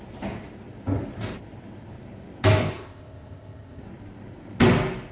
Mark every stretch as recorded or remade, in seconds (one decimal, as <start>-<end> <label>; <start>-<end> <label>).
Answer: 0.0-2.6 recorded; 2.6-3.8 remade; 3.8-5.1 recorded